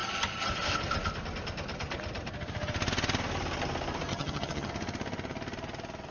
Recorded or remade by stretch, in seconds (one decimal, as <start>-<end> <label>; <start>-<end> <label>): 0.0-4.1 recorded; 4.1-4.7 remade; 4.7-6.1 recorded